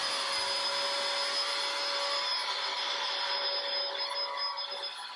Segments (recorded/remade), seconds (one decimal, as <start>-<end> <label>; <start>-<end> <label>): 0.0-5.2 recorded